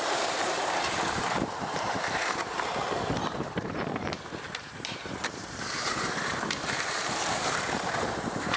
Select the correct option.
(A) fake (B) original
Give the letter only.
A